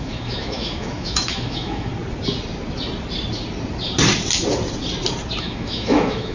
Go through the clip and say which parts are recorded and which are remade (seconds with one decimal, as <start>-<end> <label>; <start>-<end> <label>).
0.0-1.9 remade; 1.9-5.4 recorded; 5.4-6.3 remade